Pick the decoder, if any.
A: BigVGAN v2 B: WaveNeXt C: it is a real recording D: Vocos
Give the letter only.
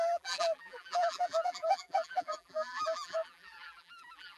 A